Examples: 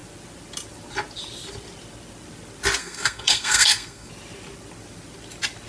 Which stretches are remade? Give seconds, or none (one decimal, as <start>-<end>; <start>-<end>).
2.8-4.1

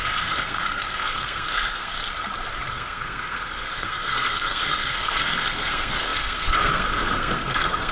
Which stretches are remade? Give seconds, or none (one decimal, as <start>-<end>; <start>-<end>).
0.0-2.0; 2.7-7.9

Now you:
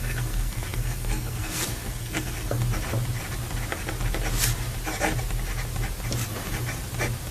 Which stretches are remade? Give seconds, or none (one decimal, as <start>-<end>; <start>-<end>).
0.0-2.6